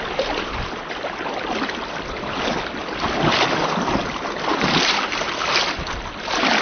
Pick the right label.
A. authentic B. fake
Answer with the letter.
A